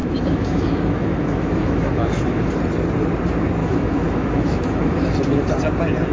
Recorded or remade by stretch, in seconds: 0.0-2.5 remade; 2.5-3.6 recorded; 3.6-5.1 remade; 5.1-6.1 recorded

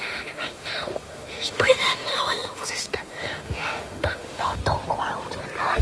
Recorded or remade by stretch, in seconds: 0.0-4.6 remade; 4.6-5.8 recorded